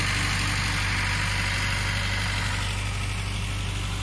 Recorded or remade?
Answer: recorded